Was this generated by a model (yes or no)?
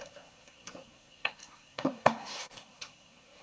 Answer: yes